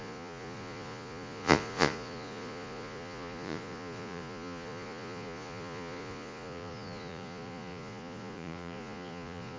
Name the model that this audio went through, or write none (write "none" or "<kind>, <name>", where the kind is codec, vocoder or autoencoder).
vocoder, Vocos